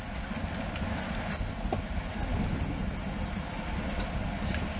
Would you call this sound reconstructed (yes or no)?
no